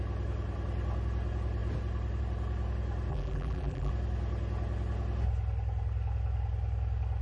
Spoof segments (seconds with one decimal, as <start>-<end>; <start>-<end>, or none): 3.1-3.9